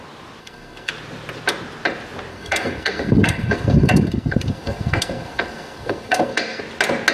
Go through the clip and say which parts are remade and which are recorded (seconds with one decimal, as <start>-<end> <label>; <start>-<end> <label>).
0.0-0.4 recorded; 0.4-0.9 remade; 0.9-2.3 recorded; 2.3-6.6 remade; 6.6-7.1 recorded